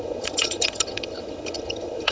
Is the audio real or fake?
fake